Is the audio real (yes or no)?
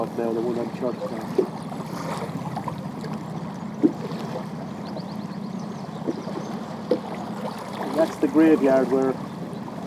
yes